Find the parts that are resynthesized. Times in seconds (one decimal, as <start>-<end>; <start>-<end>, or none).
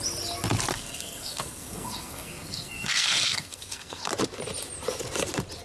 0.7-4.1